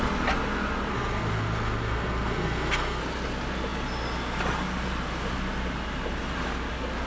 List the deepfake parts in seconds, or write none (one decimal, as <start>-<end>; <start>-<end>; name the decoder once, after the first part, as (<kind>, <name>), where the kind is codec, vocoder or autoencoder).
0.9-3.0 (codec, SNAC)